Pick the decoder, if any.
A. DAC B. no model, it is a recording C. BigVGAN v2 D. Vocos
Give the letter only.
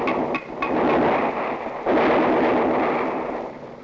B